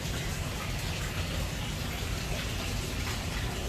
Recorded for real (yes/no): yes